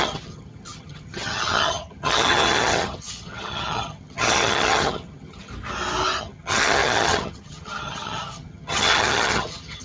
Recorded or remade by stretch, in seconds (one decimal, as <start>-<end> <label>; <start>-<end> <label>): 0.0-5.5 remade; 5.5-6.2 recorded; 6.2-9.8 remade